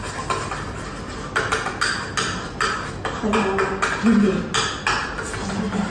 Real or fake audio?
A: real